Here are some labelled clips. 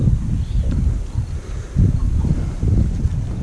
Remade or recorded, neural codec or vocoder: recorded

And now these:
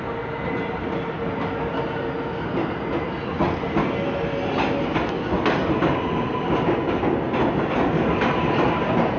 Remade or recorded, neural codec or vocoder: recorded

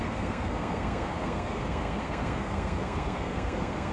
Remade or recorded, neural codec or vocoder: remade, codec, SNAC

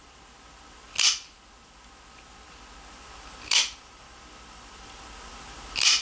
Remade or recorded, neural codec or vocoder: recorded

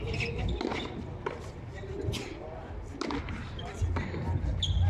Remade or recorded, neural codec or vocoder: recorded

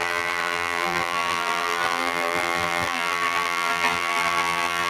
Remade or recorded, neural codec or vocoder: remade, vocoder, BigVGAN v2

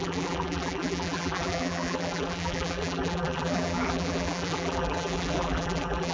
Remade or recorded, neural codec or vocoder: remade, vocoder, BigVGAN v2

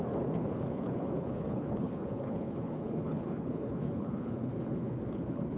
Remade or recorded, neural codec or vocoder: remade, codec, HILCodec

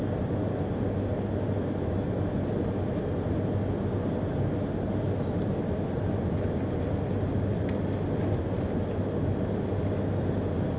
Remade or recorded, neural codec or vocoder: recorded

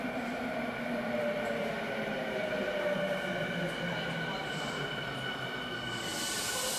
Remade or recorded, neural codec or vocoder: recorded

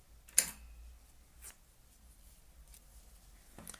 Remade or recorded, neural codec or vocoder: recorded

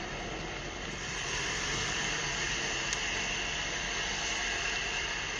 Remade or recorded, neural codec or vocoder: remade, vocoder, BigVGAN v2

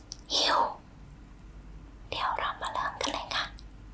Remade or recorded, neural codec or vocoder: recorded